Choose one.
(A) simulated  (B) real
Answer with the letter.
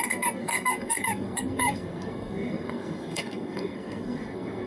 A